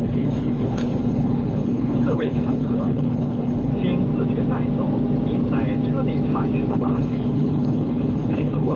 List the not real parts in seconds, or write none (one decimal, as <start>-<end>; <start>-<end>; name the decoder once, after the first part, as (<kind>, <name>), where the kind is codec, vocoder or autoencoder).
0.0-3.7 (codec, HILCodec); 6.7-8.8

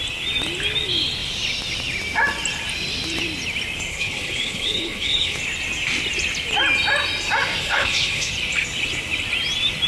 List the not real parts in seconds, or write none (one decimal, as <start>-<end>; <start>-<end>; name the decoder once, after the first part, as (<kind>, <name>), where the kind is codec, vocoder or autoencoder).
3.9-5.4 (codec, HILCodec); 7.6-8.3

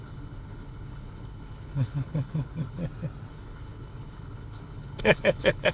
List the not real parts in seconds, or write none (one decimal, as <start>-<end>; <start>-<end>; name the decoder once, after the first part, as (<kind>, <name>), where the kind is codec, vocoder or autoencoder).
0.0-2.8 (codec, HILCodec); 3.3-5.7

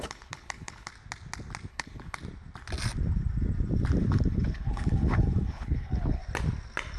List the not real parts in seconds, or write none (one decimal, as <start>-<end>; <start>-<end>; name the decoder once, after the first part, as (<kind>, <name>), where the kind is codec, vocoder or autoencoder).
0.0-0.9 (codec, HILCodec); 1.7-2.2; 4.0-6.2

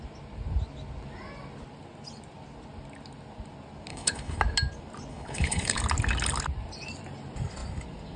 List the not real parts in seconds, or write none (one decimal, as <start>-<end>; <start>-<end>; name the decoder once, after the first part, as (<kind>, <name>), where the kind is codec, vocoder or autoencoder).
3.9-4.4 (codec, HILCodec); 5.1-5.8

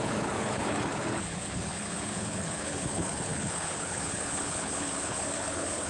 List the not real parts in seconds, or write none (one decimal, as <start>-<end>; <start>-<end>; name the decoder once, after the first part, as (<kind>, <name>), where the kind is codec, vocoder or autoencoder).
0.0-5.9 (codec, HILCodec)

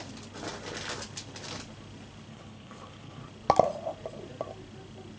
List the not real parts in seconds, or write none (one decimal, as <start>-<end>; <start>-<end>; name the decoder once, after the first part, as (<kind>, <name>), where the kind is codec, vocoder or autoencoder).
2.3-3.2 (codec, HILCodec)